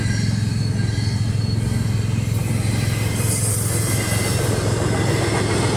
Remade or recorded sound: recorded